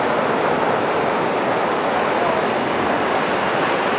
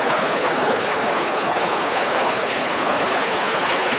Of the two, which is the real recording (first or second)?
first